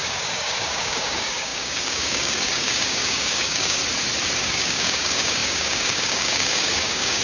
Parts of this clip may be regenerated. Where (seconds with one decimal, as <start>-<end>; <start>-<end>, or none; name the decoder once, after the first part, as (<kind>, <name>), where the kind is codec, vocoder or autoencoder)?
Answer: 0.0-3.8 (codec, DAC); 4.4-7.2